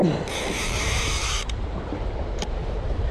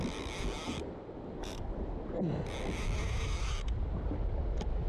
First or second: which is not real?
first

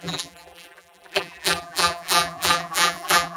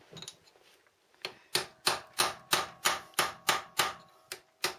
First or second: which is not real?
first